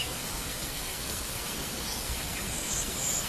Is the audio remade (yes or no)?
yes